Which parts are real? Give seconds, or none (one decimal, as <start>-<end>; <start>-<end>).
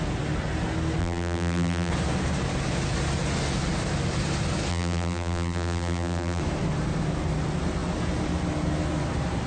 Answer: 0.0-1.0; 1.9-4.7; 6.4-9.5